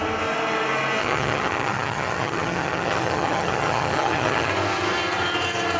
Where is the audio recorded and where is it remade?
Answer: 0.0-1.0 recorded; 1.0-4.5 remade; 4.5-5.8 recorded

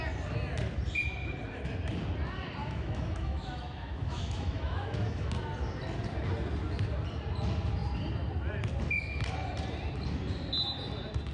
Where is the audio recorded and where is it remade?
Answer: 0.0-2.6 recorded; 2.6-5.3 remade; 5.3-11.3 recorded

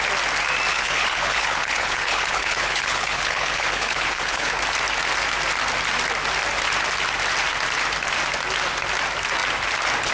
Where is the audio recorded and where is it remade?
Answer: 0.0-0.7 recorded; 0.7-4.5 remade; 4.5-10.1 recorded

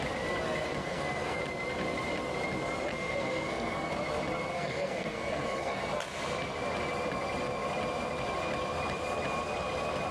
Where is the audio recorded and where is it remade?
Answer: 0.0-0.8 recorded; 0.8-1.4 remade; 1.4-2.9 recorded; 2.9-3.9 remade; 3.9-4.5 recorded; 4.5-5.8 remade; 5.8-10.1 recorded

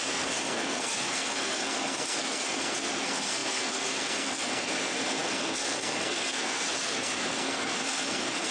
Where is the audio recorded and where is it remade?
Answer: 0.0-8.5 remade

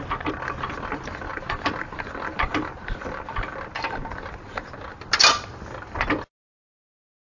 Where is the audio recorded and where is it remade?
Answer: 0.0-7.3 recorded